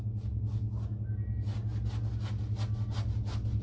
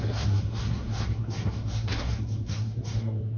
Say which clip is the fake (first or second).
second